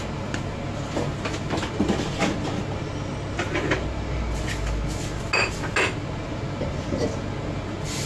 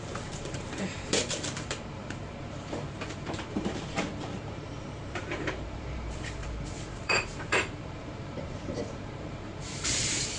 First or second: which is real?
first